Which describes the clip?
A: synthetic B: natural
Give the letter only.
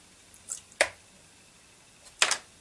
B